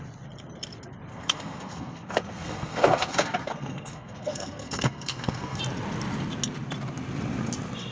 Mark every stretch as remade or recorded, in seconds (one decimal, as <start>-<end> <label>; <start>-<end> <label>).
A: 0.0-1.1 recorded; 1.1-5.6 remade; 5.6-7.9 recorded